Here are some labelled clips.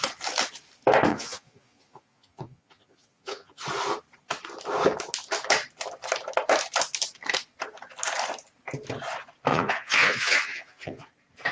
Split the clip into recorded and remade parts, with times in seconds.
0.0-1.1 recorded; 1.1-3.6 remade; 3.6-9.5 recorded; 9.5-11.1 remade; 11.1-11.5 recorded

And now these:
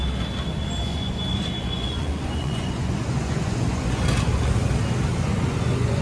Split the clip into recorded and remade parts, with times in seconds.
0.0-0.9 recorded; 0.9-4.5 remade; 4.5-5.1 recorded; 5.1-6.0 remade

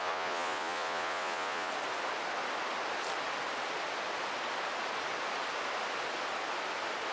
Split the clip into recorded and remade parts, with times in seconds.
0.0-1.7 remade; 1.7-7.1 recorded

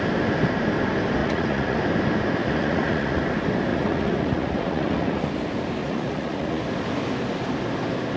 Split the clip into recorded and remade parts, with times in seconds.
0.0-1.2 recorded; 1.2-1.8 remade; 1.8-2.4 recorded; 2.4-3.2 remade; 3.2-3.7 recorded; 3.7-5.3 remade; 5.3-5.8 recorded; 5.8-6.6 remade; 6.6-8.2 recorded

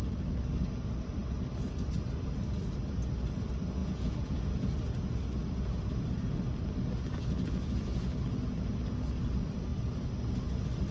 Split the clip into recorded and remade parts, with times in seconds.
0.0-3.8 recorded; 3.8-4.4 remade; 4.4-10.9 recorded

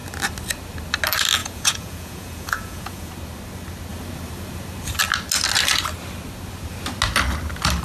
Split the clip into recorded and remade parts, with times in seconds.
0.0-1.4 recorded; 1.4-3.1 remade; 3.1-7.8 recorded

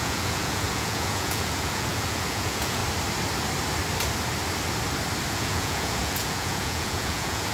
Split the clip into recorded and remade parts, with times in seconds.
0.0-2.8 remade; 2.8-5.3 recorded; 5.3-7.5 remade

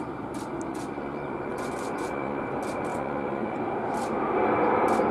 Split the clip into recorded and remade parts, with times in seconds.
0.0-0.7 recorded; 0.7-2.4 remade; 2.4-2.9 recorded; 2.9-3.6 remade; 3.6-5.1 recorded